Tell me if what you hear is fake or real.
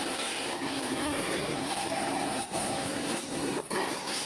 fake